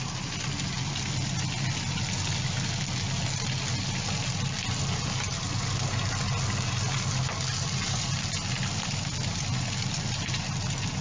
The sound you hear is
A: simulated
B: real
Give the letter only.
B